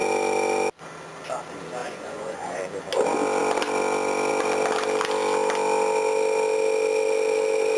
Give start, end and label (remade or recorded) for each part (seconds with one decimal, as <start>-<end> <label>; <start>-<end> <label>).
0.0-1.8 recorded; 1.8-2.6 remade; 2.6-7.8 recorded